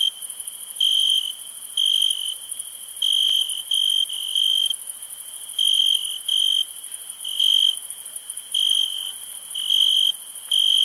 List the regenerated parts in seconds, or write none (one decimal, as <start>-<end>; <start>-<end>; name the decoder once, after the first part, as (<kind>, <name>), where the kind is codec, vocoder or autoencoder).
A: none